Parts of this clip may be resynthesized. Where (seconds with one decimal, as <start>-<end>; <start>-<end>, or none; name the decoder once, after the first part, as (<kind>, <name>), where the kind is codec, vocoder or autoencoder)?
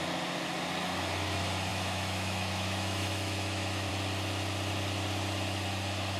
1.7-3.9 (autoencoder, DAC-VAE)